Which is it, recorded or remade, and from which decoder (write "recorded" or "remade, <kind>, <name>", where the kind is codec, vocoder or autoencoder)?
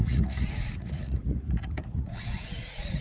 remade, vocoder, Vocos